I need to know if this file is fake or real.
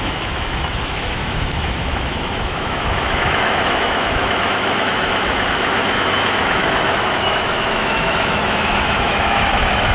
fake